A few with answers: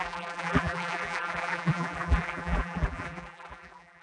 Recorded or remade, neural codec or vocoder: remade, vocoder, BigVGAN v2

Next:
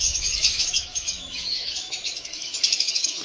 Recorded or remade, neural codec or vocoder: remade, autoencoder, DAC-VAE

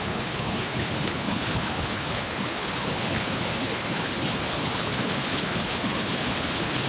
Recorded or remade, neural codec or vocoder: remade, codec, HILCodec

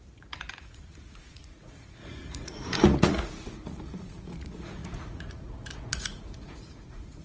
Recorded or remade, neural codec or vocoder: remade, vocoder, Vocos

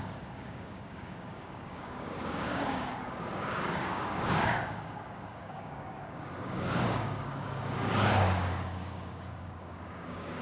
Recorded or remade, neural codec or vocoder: remade, codec, DAC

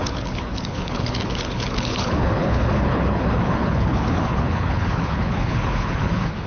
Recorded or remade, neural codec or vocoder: remade, codec, HILCodec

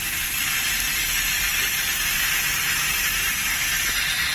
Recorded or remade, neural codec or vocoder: recorded